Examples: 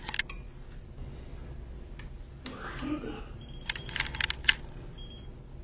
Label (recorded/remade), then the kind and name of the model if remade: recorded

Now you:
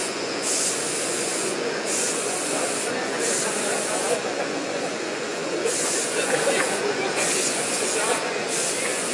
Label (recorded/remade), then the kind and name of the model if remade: remade, vocoder, Vocos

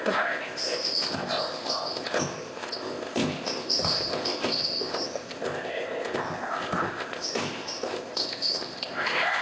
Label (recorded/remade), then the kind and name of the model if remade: remade, codec, ZipCodec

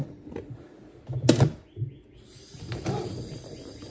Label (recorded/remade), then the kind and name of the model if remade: recorded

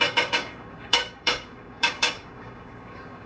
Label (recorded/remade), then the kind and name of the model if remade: remade, codec, DAC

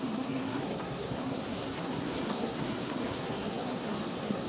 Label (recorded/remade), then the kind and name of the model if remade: remade, codec, SNAC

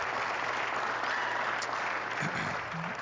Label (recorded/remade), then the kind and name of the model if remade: recorded